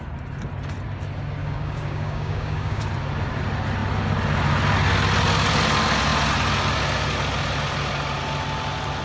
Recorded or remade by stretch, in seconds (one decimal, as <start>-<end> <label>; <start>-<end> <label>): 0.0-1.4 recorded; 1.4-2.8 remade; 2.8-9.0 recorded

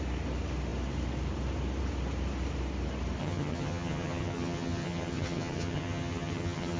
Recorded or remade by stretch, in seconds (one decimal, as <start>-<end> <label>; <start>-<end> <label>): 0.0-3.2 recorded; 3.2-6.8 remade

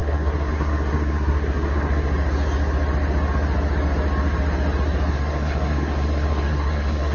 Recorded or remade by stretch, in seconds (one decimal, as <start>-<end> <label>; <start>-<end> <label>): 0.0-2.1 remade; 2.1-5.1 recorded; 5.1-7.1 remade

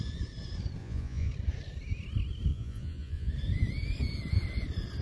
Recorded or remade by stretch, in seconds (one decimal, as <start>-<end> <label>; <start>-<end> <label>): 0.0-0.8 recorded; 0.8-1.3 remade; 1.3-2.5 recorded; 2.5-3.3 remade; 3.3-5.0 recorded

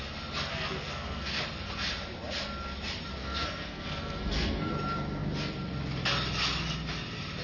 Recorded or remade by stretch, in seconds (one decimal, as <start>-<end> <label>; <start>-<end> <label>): 0.0-0.5 recorded; 0.5-1.4 remade; 1.4-3.1 recorded; 3.1-4.7 remade; 4.7-7.4 recorded